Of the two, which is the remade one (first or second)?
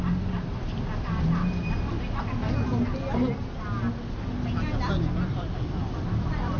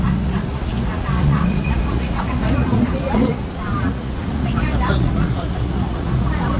second